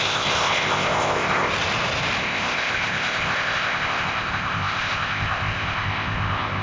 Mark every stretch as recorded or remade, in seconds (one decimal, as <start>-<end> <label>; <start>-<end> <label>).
0.0-1.5 remade; 1.5-2.2 recorded; 2.2-6.6 remade